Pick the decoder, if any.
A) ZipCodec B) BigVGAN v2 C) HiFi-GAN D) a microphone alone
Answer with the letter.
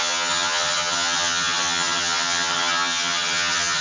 C